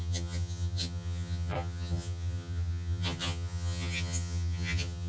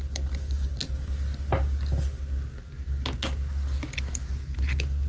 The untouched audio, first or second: second